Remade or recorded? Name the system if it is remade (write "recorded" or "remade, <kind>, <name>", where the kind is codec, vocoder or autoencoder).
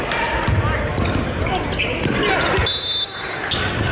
recorded